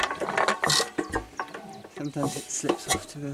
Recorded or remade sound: recorded